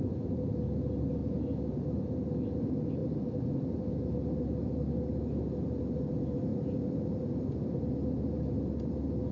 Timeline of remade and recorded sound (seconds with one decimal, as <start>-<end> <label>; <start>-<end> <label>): 0.0-9.3 recorded